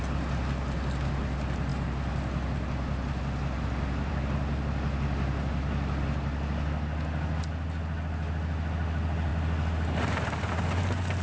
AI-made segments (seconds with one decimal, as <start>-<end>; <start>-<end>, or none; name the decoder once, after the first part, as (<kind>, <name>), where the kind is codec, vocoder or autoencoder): none